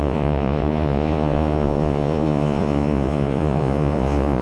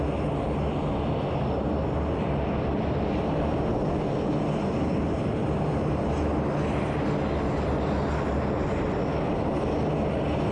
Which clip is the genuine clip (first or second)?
second